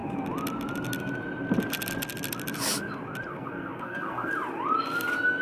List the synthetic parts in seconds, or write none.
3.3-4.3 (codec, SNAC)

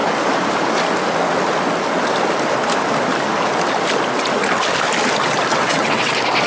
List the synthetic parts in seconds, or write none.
5.5-6.1 (vocoder, WaveNeXt)

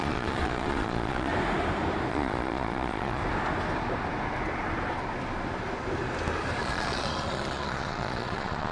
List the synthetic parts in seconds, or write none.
0.0-1.3 (vocoder, Vocos); 2.1-3.2; 6.6-8.7

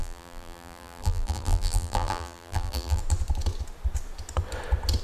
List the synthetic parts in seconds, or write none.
0.0-3.0 (vocoder, BigVGAN v2)

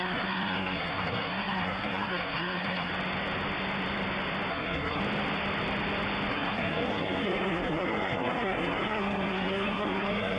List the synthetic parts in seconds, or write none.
0.0-2.9 (codec, SNAC); 4.5-5.0; 6.3-10.4